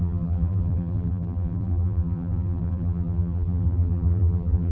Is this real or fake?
fake